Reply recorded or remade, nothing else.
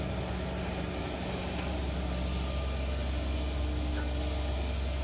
recorded